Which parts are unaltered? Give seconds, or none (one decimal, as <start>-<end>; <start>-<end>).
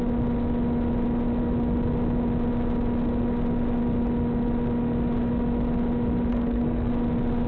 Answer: 0.0-6.3; 6.9-7.5